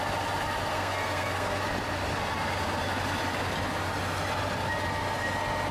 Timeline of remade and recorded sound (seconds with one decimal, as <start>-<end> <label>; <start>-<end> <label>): 0.0-0.7 recorded; 0.7-1.6 remade; 1.6-5.7 recorded